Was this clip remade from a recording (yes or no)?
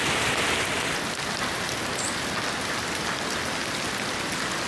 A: no